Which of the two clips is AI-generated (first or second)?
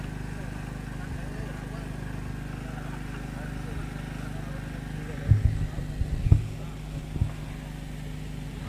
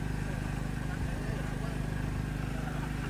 second